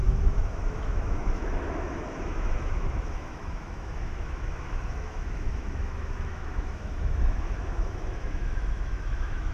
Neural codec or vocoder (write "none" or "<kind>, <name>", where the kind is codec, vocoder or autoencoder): autoencoder, DAC-VAE